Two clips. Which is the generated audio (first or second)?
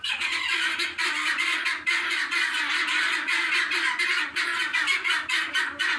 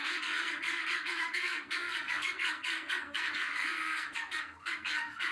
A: second